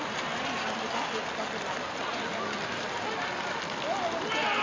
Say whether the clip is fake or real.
real